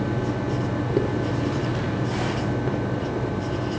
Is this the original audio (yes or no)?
yes